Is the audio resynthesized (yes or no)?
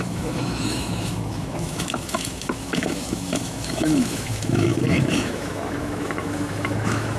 yes